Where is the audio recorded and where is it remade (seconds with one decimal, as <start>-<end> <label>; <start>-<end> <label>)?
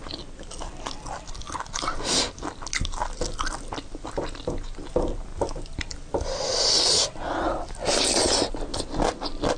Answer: 0.0-9.6 recorded